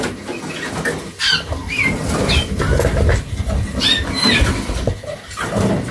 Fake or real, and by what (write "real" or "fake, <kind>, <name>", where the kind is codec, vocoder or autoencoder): real